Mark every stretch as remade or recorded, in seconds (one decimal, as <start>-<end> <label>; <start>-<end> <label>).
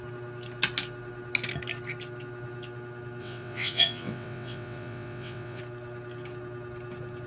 0.0-3.2 recorded; 3.2-5.6 remade; 5.6-7.3 recorded